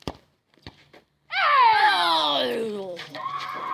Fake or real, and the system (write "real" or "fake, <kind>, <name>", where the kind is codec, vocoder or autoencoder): fake, vocoder, BigVGAN v2